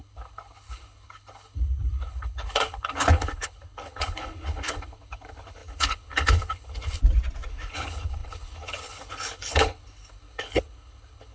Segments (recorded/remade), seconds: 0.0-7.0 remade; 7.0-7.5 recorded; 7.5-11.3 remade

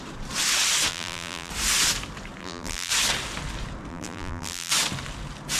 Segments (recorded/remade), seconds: 0.0-0.9 recorded; 0.9-1.5 remade; 1.5-2.4 recorded; 2.4-2.9 remade; 2.9-3.9 recorded; 3.9-4.7 remade; 4.7-5.6 recorded

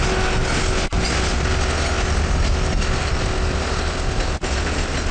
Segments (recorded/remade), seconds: 0.0-5.1 recorded